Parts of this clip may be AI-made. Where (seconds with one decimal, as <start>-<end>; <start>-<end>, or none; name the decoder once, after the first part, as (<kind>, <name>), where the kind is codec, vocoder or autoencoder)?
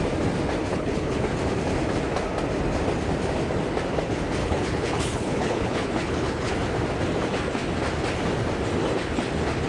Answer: 0.7-1.2 (codec, HILCodec); 4.4-6.5